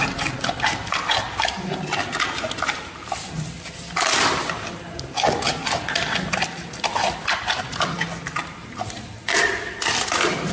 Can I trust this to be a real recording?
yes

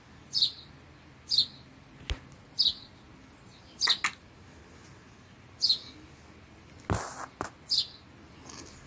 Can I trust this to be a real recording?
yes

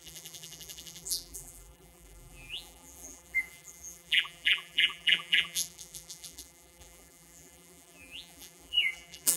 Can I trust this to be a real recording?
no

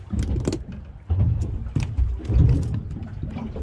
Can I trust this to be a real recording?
yes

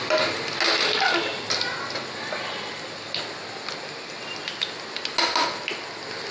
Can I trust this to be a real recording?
yes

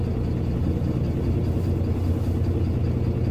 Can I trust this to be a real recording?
yes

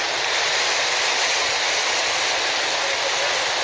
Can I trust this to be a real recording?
yes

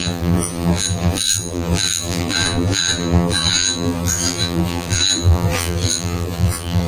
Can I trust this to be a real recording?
no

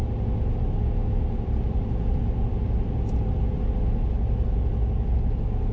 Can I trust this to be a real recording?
yes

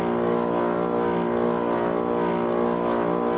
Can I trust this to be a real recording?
yes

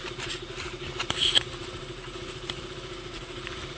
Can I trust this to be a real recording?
no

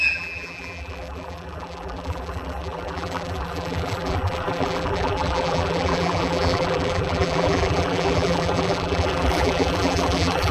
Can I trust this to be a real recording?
no